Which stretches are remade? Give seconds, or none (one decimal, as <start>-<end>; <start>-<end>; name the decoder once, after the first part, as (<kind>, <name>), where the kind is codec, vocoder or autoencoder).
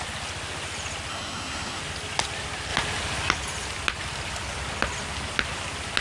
1.1-1.8 (codec, SNAC)